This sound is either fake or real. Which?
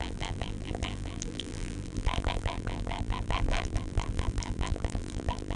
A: fake